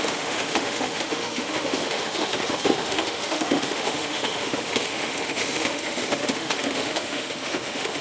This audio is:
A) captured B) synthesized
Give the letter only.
B